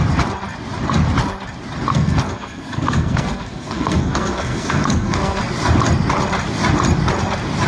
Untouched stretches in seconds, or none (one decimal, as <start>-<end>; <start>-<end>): 0.0-1.9; 5.4-7.7